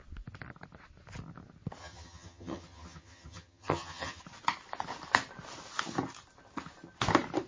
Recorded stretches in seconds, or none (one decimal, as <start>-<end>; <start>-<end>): 0.0-1.8; 4.2-7.5